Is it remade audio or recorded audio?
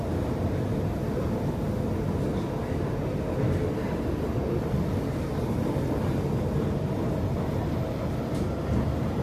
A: recorded